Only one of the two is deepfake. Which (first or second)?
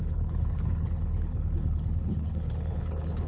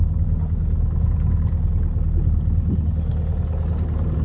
first